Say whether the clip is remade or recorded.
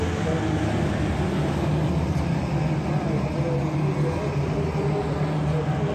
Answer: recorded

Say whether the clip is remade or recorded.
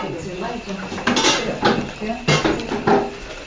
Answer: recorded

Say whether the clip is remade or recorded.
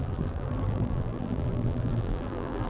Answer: remade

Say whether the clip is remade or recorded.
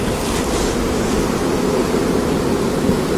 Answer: recorded